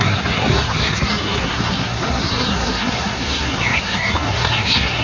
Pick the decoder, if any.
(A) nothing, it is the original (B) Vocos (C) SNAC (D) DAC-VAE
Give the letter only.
C